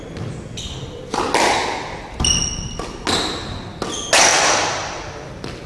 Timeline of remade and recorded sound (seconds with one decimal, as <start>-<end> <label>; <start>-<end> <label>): 0.0-4.3 recorded; 4.3-5.3 remade; 5.3-5.7 recorded